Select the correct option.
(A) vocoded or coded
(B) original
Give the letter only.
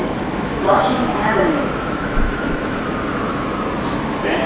A